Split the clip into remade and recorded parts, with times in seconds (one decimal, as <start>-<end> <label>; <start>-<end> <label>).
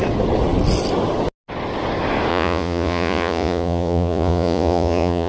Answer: 0.0-2.3 recorded; 2.3-5.3 remade